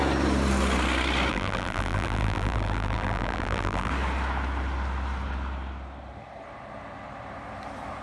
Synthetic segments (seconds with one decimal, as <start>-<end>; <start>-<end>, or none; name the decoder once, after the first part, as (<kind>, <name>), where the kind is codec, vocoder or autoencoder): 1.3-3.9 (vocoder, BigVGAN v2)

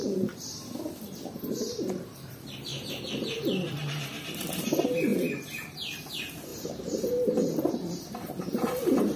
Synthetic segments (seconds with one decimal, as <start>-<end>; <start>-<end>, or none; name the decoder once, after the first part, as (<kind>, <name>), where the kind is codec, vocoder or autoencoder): 0.0-9.2 (vocoder, BigVGAN v2)

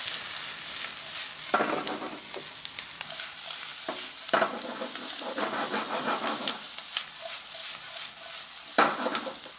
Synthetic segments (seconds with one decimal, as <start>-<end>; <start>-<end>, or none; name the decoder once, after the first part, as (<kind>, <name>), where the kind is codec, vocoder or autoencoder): none

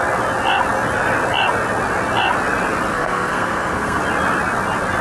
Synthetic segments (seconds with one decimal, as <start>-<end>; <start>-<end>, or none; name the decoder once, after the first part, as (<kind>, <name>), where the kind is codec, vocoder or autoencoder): 2.9-4.0 (codec, SNAC)

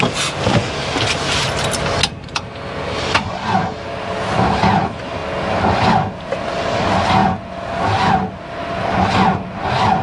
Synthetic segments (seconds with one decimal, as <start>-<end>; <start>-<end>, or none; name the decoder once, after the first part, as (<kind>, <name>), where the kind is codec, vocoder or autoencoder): none

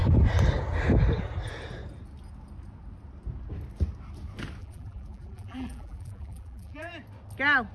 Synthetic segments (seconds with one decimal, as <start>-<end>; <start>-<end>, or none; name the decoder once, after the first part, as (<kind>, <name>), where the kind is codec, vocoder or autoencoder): 4.6-6.9 (vocoder, BigVGAN v2)

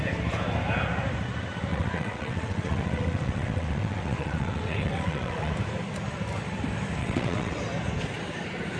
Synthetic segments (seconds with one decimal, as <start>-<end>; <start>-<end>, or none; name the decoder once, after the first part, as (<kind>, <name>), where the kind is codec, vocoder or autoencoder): 1.7-5.5 (vocoder, WaveNeXt); 7.0-7.6